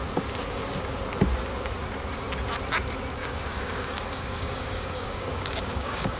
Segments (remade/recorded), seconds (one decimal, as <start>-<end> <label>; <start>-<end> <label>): 0.0-3.2 recorded; 3.2-6.2 remade